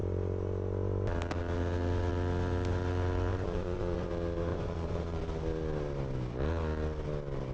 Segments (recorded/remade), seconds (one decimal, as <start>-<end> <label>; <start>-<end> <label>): 0.0-3.3 recorded; 3.3-4.1 remade; 4.1-4.5 recorded; 4.5-5.2 remade; 5.2-7.5 recorded